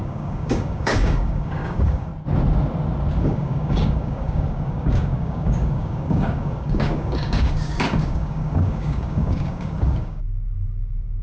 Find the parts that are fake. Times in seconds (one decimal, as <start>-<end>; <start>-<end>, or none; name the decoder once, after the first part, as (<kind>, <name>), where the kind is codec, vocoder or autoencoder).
0.0-2.1 (codec, DAC); 3.2-11.2